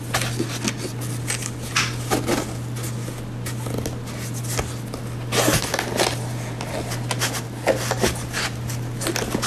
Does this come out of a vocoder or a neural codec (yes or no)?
no